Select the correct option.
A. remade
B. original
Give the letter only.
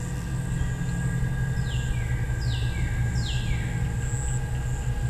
B